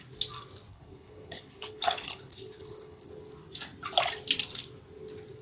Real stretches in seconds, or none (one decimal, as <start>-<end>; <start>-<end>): 0.0-0.7; 3.1-5.4